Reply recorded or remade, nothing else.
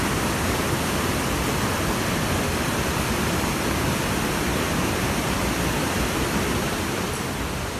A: remade